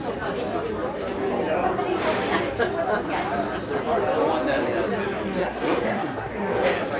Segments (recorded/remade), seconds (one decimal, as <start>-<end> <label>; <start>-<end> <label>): 0.0-5.4 recorded; 5.4-6.3 remade; 6.3-7.0 recorded